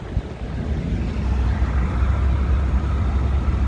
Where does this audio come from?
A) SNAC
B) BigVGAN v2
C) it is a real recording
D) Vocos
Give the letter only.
C